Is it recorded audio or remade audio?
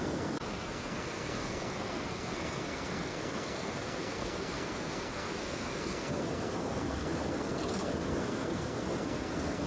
remade